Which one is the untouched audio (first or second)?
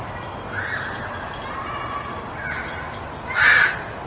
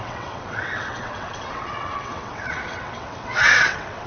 first